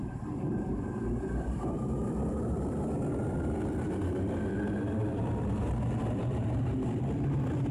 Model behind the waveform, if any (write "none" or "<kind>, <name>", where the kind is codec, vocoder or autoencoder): vocoder, BigVGAN v2